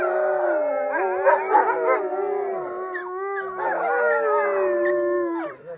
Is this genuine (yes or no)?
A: yes